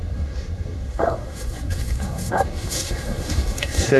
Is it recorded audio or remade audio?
remade